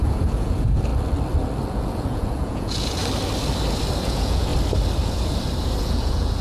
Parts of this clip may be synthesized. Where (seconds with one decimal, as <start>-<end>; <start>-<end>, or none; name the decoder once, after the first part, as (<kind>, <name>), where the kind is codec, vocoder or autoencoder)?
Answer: 0.0-0.9 (vocoder, Vocos); 1.7-3.0; 4.0-4.5; 5.8-6.4